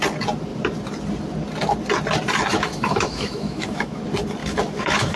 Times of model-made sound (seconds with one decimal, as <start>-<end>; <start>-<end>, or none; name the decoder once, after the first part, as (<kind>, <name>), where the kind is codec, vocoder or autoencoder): 2.5-4.0 (autoencoder, DAC-VAE); 4.4-5.2

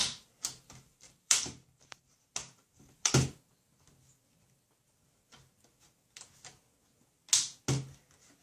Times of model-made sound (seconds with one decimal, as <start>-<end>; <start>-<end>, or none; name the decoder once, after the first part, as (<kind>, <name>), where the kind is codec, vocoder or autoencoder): 0.0-2.0 (vocoder, BigVGAN v2); 2.4-3.1

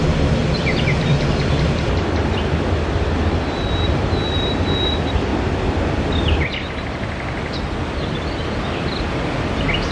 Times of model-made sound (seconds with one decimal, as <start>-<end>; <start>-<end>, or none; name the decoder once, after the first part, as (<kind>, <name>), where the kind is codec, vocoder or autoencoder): 0.0-0.4 (vocoder, BigVGAN v2); 2.2-5.3; 9.0-9.9

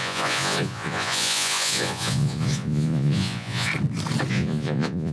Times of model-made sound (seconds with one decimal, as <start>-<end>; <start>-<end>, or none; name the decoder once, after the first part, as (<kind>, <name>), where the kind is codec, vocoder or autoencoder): 0.0-3.7 (vocoder, Vocos); 4.3-5.1

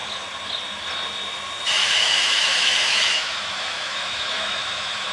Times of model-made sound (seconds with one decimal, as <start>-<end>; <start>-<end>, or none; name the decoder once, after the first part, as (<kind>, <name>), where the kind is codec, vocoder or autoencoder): 1.8-5.1 (autoencoder, DAC-VAE)

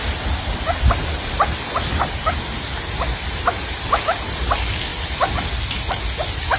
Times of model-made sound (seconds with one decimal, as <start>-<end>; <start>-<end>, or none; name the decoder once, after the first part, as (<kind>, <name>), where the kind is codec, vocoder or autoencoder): none